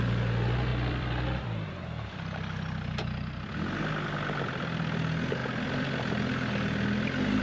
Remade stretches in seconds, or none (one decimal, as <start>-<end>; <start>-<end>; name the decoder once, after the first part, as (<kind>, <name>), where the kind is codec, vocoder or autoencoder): 0.7-1.7 (vocoder, BigVGAN v2)